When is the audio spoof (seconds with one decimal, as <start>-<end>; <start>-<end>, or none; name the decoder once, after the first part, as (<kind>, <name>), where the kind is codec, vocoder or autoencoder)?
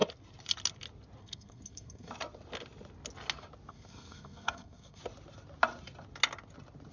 1.2-2.1 (codec, SNAC); 3.7-5.0